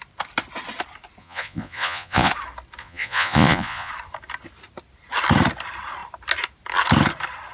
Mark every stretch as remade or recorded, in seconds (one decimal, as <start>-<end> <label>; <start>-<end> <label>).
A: 0.0-1.2 recorded; 1.2-2.3 remade; 2.3-2.8 recorded; 2.8-3.9 remade; 3.9-7.5 recorded